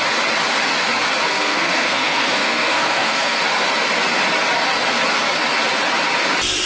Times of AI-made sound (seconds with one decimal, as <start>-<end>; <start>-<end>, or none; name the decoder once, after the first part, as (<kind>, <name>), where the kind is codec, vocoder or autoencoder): 1.3-3.4 (codec, SNAC)